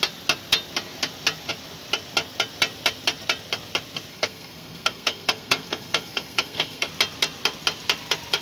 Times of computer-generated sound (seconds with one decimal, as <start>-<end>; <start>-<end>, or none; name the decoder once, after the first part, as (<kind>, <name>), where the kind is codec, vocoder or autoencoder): 4.1-6.9 (codec, SNAC)